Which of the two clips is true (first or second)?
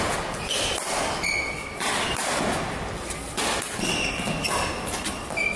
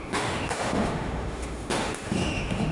first